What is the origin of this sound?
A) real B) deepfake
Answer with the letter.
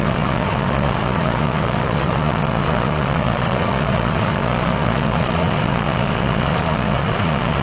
B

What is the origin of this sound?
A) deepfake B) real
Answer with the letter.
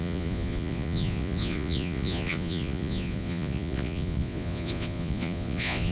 A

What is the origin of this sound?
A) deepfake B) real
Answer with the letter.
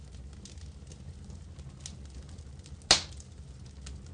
B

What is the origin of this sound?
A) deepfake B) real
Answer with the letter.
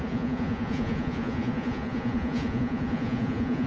A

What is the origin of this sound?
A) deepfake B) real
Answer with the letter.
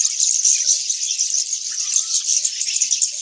B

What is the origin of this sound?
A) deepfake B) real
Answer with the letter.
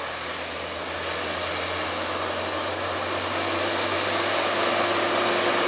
B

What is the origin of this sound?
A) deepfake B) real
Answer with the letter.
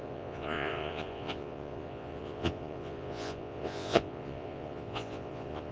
A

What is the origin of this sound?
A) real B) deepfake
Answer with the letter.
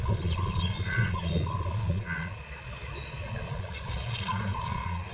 B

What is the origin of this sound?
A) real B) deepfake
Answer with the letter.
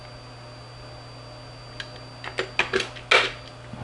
A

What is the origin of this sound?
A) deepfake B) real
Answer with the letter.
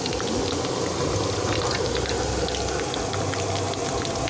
B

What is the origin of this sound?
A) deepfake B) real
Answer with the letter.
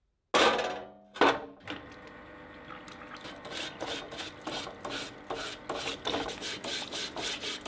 B